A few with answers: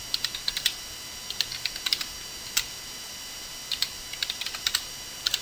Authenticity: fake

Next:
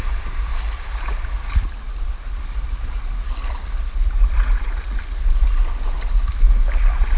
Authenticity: real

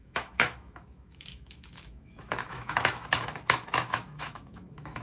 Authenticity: fake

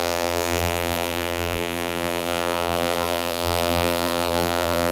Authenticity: fake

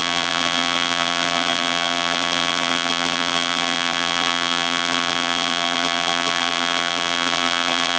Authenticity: fake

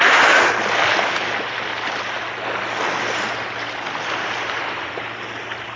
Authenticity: real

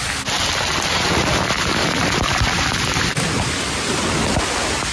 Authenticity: real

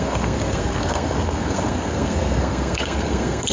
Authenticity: fake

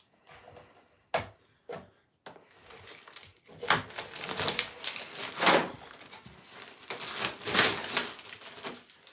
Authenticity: real